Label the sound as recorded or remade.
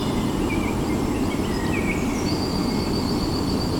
remade